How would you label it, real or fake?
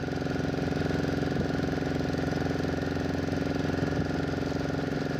real